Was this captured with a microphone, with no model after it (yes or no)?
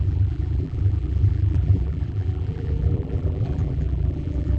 no